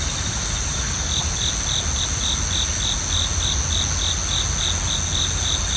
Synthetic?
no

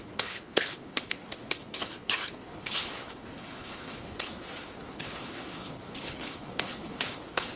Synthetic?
yes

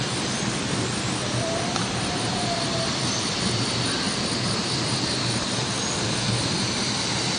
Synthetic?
yes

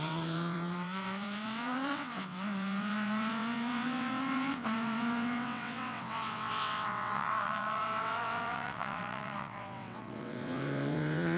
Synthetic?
yes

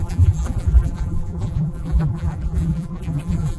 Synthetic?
yes